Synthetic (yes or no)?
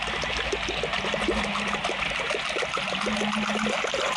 no